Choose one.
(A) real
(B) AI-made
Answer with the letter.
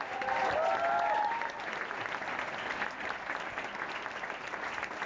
A